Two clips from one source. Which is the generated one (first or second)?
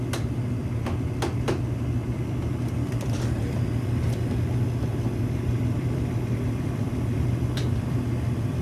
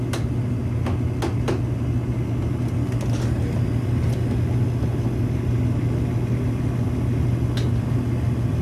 first